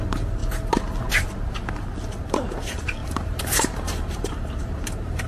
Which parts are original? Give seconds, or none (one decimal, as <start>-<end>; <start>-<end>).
0.4-2.3

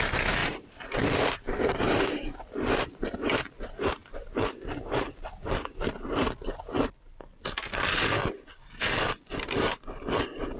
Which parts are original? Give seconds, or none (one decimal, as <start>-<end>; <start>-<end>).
0.0-0.4; 2.0-10.6